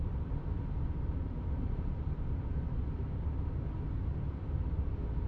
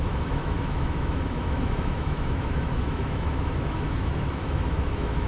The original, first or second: first